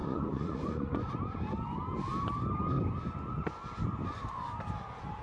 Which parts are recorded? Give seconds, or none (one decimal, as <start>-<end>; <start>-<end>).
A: 1.1-5.2